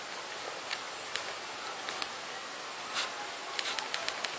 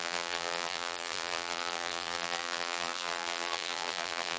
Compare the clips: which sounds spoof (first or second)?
second